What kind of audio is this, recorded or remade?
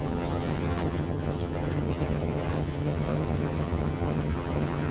remade